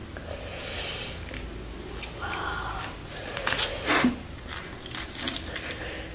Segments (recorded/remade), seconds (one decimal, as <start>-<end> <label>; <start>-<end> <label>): 0.0-3.0 recorded; 3.0-4.1 remade; 4.1-6.1 recorded

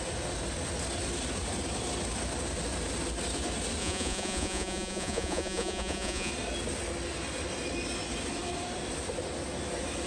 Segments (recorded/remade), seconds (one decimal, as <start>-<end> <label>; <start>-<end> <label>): 0.0-3.8 recorded; 3.8-6.3 remade; 6.3-10.1 recorded

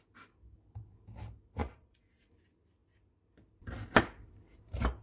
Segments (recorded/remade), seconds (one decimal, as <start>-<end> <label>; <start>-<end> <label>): 0.0-1.6 recorded; 1.6-2.3 remade; 2.3-5.0 recorded

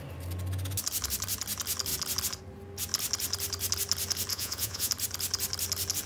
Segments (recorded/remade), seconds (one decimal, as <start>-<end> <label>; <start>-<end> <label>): 0.0-4.3 recorded; 4.3-4.9 remade; 4.9-6.1 recorded